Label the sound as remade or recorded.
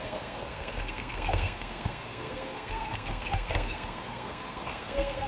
remade